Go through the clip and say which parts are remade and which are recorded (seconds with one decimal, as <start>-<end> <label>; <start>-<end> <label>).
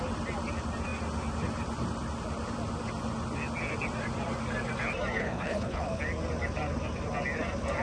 0.0-5.2 recorded; 5.2-6.0 remade; 6.0-7.8 recorded